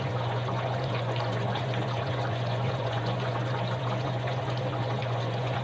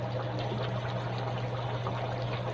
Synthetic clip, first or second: first